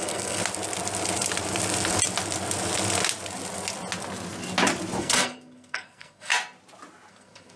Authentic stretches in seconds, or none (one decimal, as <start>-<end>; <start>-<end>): 0.4-5.0; 6.3-7.1